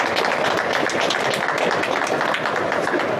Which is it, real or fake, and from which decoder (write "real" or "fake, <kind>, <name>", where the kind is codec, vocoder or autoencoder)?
real